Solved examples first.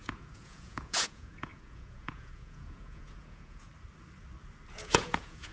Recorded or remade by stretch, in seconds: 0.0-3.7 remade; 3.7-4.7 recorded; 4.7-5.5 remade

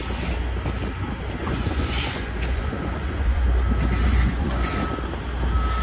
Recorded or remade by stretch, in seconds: 0.0-1.4 recorded; 1.4-3.4 remade; 3.4-4.1 recorded; 4.1-4.7 remade; 4.7-5.8 recorded

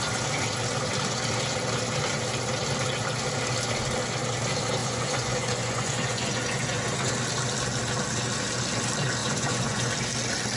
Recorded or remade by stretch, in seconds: 0.0-4.8 recorded; 4.8-7.1 remade; 7.1-9.2 recorded; 9.2-9.9 remade; 9.9-10.6 recorded